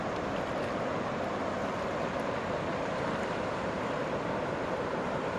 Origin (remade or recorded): recorded